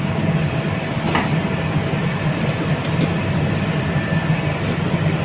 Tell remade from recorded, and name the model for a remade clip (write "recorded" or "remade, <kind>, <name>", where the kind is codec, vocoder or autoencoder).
recorded